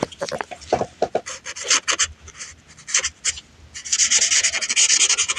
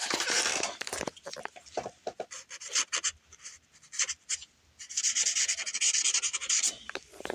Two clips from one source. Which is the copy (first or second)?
second